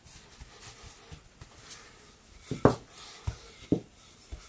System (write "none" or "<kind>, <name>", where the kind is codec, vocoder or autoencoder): none